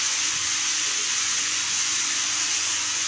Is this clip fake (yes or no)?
yes